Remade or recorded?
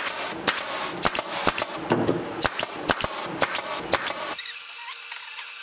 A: recorded